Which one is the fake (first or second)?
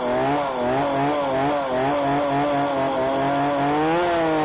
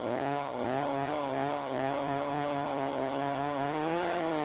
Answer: second